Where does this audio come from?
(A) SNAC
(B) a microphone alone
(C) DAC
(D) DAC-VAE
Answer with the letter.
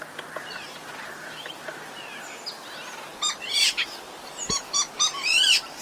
B